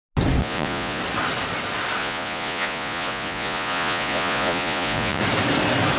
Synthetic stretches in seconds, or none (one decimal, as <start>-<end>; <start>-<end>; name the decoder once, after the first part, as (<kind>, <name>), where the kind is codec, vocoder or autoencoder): 0.4-1.0 (vocoder, Vocos); 2.0-5.2